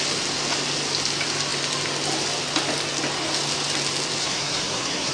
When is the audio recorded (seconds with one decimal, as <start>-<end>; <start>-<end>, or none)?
0.0-4.2